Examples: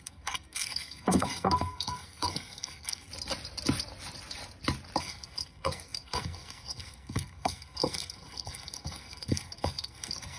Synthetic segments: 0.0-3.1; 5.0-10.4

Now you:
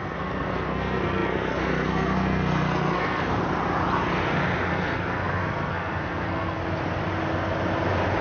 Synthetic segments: 0.0-3.4; 4.7-6.6

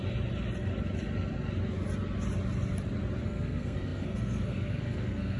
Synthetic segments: 3.2-5.4